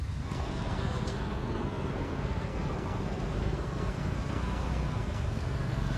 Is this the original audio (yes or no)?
no